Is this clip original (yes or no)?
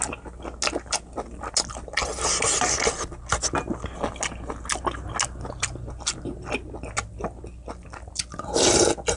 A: yes